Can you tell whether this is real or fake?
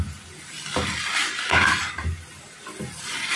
real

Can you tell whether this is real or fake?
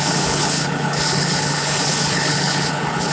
fake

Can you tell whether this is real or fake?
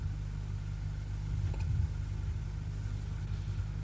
real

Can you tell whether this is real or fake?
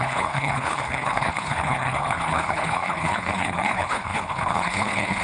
fake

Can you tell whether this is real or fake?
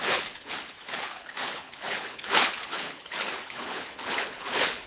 fake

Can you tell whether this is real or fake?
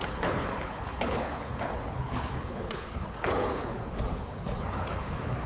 fake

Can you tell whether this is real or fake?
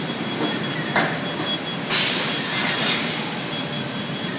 real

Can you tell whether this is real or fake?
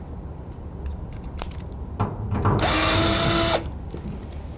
real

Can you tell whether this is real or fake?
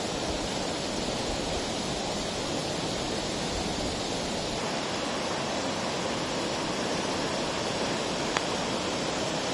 real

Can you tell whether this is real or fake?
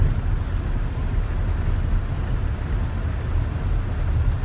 real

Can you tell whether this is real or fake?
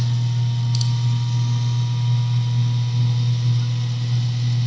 real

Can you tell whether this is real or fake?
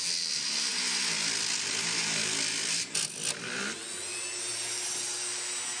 real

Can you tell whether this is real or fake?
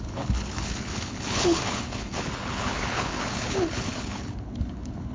fake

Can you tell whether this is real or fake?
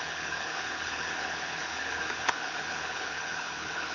fake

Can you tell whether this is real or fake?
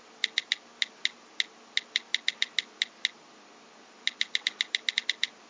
real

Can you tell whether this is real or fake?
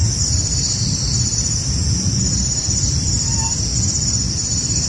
real